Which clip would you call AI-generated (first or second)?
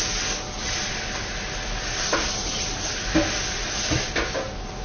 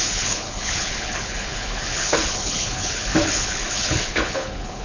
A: second